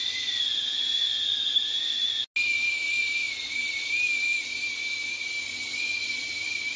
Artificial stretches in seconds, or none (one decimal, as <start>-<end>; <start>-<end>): none